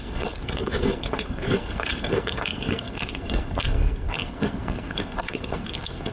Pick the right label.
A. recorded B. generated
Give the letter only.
B